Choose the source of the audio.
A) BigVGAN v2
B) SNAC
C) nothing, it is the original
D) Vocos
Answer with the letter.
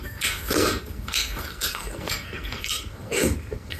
B